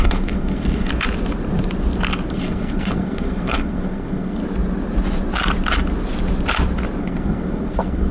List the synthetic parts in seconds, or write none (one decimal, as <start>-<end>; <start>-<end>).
0.0-0.9; 2.3-4.4; 7.0-8.1

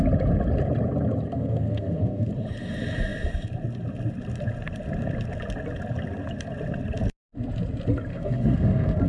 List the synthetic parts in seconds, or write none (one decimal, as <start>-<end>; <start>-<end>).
1.3-2.3; 8.1-9.1

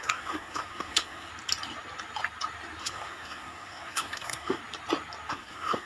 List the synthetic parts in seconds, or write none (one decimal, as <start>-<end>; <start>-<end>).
0.0-1.3; 2.8-4.6; 5.3-5.9

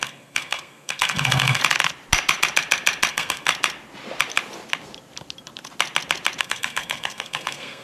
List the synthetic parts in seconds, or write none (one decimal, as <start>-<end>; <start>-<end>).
0.0-1.6; 3.1-3.5; 6.4-7.8

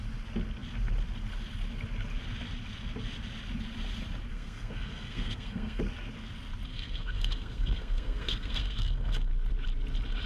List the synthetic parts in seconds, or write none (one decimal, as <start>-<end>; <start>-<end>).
4.3-5.8; 6.7-9.3